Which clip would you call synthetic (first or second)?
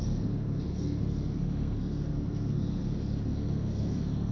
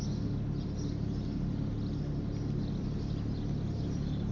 first